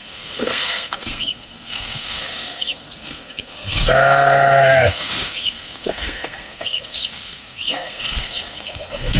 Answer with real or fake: fake